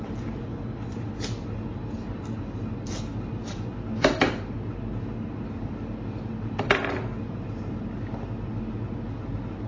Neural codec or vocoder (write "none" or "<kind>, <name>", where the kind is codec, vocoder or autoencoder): none